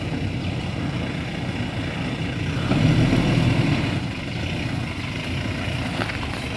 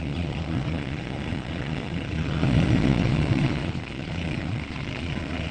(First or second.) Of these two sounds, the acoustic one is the first